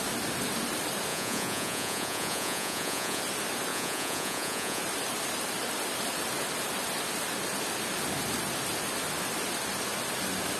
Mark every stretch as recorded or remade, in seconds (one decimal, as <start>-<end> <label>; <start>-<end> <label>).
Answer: 0.0-1.1 recorded; 1.1-3.2 remade; 3.2-3.7 recorded; 3.7-4.8 remade; 4.8-10.6 recorded